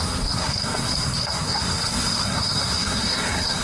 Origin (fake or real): fake